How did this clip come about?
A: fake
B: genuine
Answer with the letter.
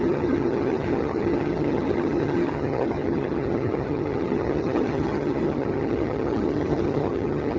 A